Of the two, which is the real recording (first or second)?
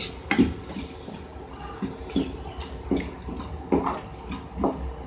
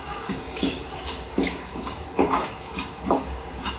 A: first